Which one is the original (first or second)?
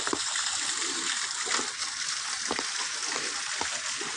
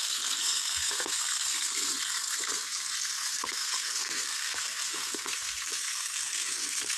first